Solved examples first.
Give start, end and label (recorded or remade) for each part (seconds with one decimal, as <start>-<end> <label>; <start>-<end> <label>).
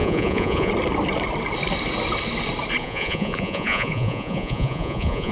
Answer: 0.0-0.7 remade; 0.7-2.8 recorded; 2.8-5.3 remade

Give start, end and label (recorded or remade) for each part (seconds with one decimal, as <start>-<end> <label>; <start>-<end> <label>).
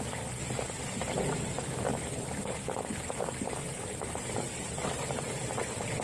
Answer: 0.0-1.9 recorded; 1.9-5.4 remade; 5.4-6.0 recorded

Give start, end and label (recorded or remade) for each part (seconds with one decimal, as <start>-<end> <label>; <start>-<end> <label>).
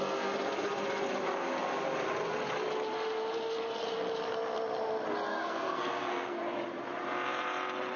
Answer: 0.0-5.3 recorded; 5.3-6.4 remade; 6.4-8.0 recorded